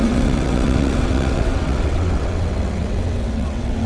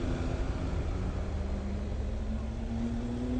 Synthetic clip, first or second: first